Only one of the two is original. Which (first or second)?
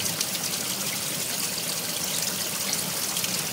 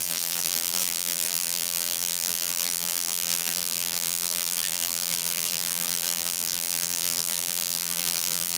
first